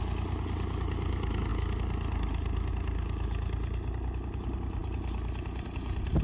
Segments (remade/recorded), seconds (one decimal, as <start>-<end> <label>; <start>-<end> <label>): 0.0-6.2 recorded

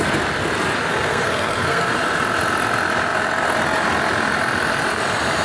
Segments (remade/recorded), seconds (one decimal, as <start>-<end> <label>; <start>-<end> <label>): 0.0-0.9 recorded; 0.9-1.9 remade; 1.9-5.4 recorded

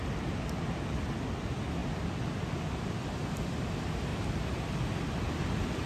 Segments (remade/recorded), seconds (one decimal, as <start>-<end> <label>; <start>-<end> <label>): 0.0-5.9 recorded

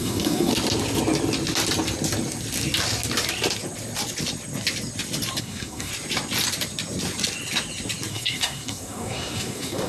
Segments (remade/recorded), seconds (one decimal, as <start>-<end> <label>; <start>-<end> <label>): 0.0-0.5 remade; 0.5-5.4 recorded; 5.4-5.9 remade; 5.9-8.1 recorded; 8.1-9.9 remade

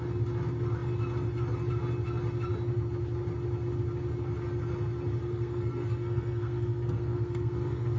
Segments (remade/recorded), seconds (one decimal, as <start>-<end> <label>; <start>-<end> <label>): 0.0-5.2 recorded; 5.2-8.0 remade

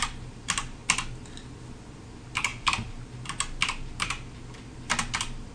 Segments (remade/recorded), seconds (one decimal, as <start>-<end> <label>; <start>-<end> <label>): 0.0-5.5 recorded

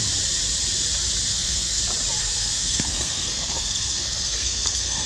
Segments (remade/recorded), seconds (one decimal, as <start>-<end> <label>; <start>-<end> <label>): 0.0-1.3 recorded; 1.3-1.8 remade; 1.8-2.2 recorded; 2.2-5.1 remade

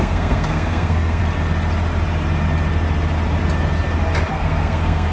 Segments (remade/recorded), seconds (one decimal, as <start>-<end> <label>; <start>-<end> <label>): 0.0-1.2 remade; 1.2-4.3 recorded; 4.3-5.1 remade